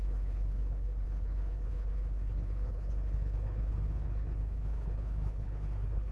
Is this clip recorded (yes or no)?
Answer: no